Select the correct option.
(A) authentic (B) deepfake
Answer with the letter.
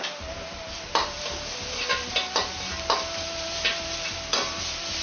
A